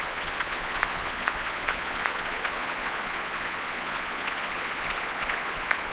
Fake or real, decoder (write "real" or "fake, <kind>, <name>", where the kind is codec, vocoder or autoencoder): fake, vocoder, Vocos